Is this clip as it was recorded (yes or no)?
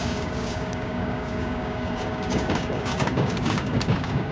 no